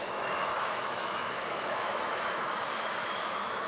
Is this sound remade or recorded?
remade